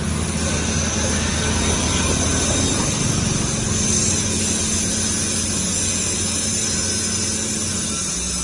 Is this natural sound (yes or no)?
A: yes